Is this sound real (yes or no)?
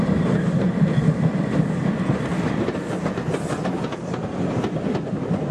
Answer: yes